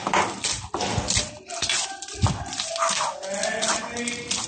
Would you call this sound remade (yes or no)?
no